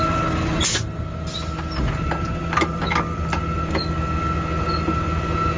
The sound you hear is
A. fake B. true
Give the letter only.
B